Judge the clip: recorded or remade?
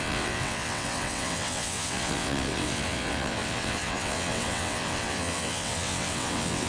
remade